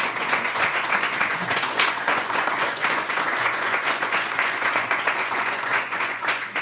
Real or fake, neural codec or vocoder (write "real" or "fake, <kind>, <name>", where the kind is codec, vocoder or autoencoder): fake, vocoder, Vocos